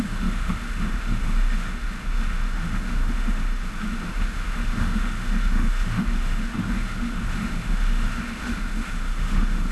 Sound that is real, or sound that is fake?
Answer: fake